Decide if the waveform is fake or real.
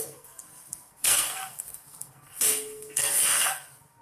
fake